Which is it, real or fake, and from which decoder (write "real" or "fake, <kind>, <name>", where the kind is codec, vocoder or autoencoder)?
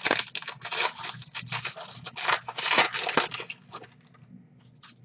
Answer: real